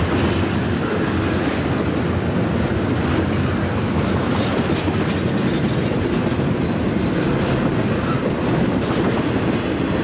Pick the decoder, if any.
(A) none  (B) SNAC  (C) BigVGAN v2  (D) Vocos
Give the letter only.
A